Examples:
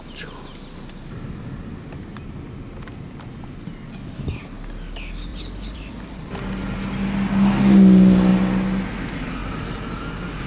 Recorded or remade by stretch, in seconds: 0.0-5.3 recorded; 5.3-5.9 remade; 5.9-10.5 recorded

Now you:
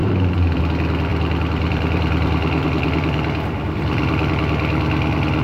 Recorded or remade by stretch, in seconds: 0.0-0.6 remade; 0.6-1.1 recorded; 1.1-4.3 remade; 4.3-5.4 recorded

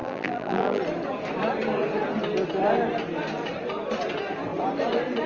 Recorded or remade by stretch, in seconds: 0.0-0.8 remade; 0.8-5.3 recorded

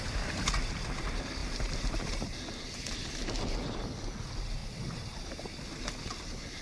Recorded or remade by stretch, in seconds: 0.0-1.4 recorded; 1.4-2.4 remade; 2.4-4.6 recorded; 4.6-5.5 remade; 5.5-6.6 recorded

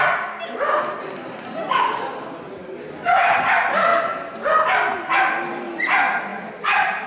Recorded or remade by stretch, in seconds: 0.0-6.3 recorded; 6.3-7.1 remade

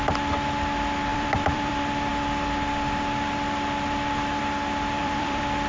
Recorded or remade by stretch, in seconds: 0.0-1.1 recorded; 1.1-1.7 remade; 1.7-5.0 recorded; 5.0-5.7 remade

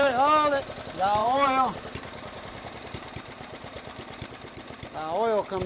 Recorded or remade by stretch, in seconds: 0.0-1.2 recorded; 1.2-4.3 remade; 4.3-5.7 recorded